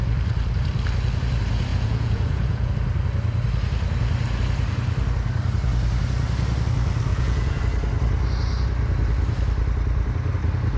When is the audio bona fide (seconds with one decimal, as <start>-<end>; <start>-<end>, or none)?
0.0-1.7; 2.7-7.1; 7.6-10.8